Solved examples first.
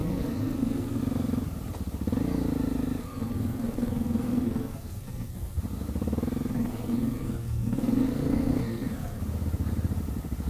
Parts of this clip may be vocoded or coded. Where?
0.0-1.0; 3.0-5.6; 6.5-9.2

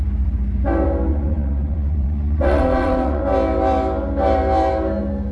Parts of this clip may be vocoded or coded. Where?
1.1-3.2